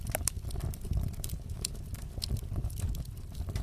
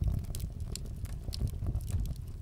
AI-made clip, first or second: first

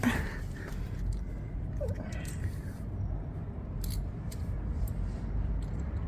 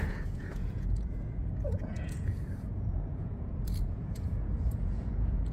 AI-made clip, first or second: second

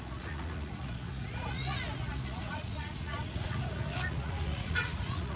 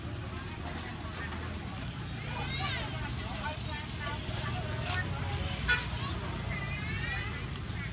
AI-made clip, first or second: first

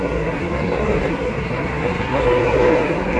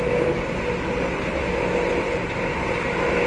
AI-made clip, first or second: first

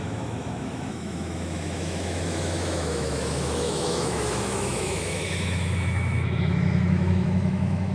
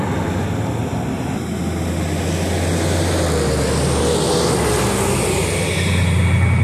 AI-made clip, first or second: first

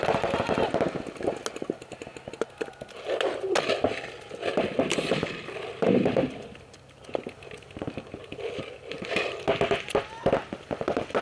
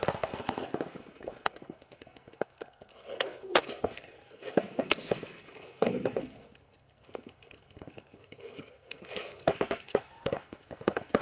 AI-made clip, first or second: second